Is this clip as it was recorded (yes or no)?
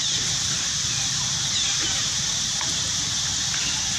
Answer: no